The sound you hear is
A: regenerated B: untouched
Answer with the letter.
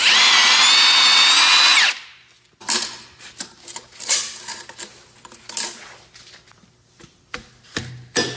B